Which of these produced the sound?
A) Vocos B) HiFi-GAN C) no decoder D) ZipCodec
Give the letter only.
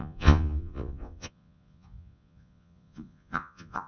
A